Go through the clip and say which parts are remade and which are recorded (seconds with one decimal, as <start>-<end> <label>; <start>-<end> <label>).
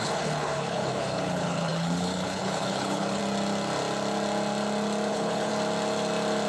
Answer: 0.0-3.2 remade; 3.2-5.1 recorded; 5.1-5.5 remade; 5.5-6.5 recorded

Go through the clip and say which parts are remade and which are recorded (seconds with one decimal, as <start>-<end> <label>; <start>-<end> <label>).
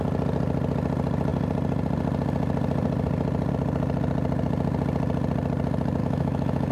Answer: 0.0-6.0 recorded; 6.0-6.7 remade